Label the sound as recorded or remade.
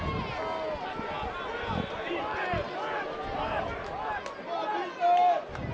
recorded